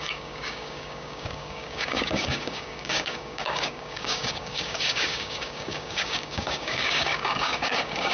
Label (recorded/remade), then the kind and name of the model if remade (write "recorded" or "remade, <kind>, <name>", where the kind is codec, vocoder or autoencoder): remade, codec, DAC